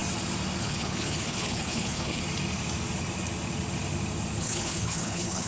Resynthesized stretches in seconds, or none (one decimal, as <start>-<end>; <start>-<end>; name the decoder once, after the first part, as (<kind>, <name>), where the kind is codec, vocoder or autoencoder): 0.6-2.2 (codec, HILCodec); 4.4-5.5